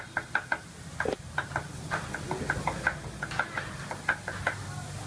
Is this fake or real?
real